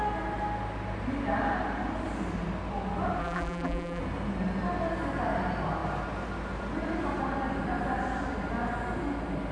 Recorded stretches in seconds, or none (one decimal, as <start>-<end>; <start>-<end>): 0.0-3.2; 4.0-9.5